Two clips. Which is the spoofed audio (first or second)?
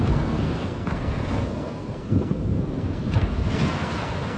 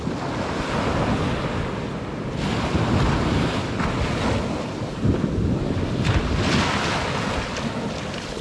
first